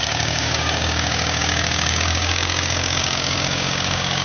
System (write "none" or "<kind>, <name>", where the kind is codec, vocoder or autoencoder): codec, DAC